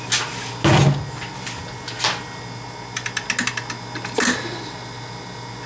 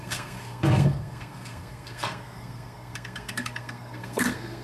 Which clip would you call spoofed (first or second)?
second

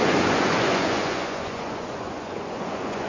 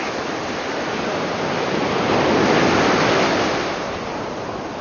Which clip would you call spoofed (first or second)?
first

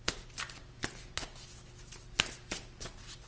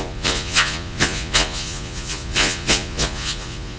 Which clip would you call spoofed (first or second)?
second